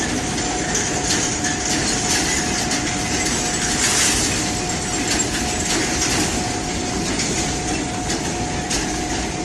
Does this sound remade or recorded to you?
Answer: recorded